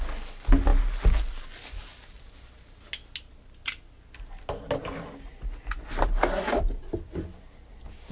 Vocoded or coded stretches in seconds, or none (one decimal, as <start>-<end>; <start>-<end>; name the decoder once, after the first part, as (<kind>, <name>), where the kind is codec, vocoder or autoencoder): none